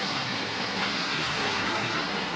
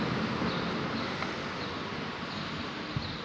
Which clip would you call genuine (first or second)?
second